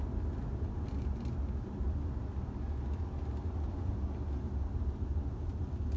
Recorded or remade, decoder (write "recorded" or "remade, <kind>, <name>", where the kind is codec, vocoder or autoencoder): recorded